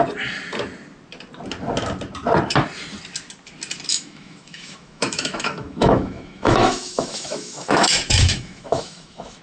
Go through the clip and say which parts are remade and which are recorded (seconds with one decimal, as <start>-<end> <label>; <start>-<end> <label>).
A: 0.0-3.9 recorded; 3.9-9.4 remade